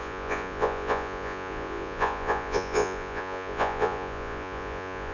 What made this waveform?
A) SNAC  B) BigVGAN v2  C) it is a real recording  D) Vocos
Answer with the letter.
D